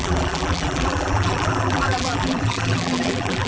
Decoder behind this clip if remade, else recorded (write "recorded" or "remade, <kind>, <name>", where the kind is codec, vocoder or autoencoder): remade, vocoder, BigVGAN v2